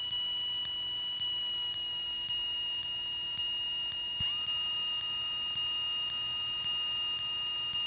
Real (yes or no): yes